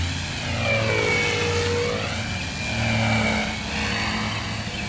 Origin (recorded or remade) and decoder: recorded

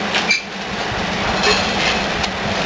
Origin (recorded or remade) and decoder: recorded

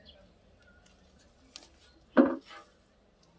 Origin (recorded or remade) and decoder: recorded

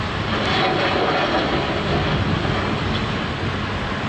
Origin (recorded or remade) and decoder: recorded